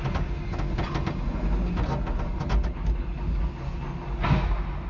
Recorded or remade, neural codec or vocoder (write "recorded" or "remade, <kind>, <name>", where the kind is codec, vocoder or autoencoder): recorded